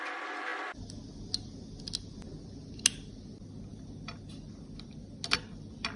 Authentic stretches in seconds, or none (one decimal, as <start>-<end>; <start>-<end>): 0.0-6.0

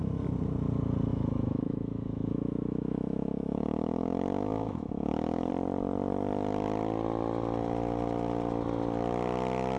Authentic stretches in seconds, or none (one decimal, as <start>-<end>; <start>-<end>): 0.0-1.1; 5.5-9.8